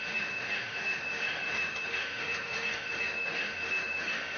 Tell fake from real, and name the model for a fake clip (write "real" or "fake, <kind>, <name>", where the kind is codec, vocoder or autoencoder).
fake, autoencoder, DAC-VAE